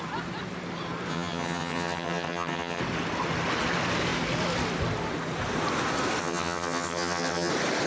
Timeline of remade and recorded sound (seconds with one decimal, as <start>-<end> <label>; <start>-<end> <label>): 0.0-1.1 recorded; 1.1-2.8 remade; 2.8-6.2 recorded; 6.2-7.5 remade; 7.5-7.9 recorded